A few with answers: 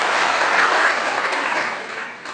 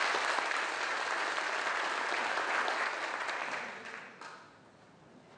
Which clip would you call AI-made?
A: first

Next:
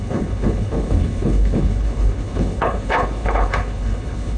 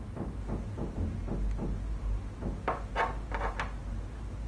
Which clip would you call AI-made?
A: first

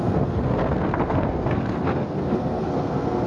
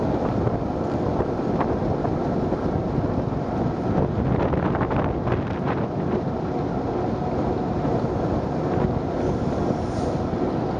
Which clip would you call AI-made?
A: first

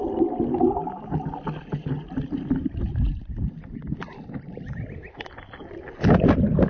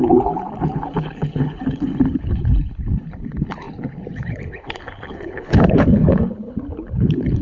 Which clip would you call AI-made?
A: second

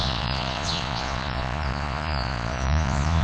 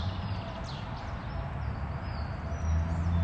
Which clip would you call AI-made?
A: first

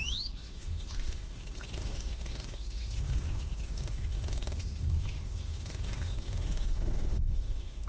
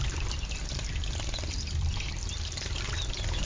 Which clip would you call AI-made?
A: first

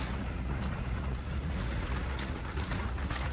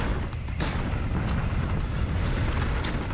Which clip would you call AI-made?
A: first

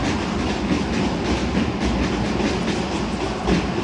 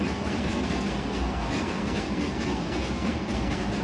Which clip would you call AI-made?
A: second